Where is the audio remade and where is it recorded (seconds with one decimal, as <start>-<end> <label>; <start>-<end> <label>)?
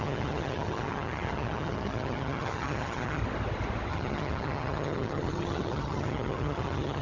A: 0.0-3.2 remade; 3.2-3.9 recorded; 3.9-7.0 remade